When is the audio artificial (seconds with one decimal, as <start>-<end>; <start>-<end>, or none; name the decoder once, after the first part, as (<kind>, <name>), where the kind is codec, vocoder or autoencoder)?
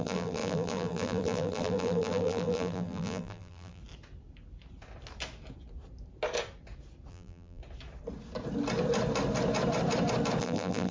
0.0-3.8 (vocoder, BigVGAN v2); 7.1-7.6; 10.4-10.9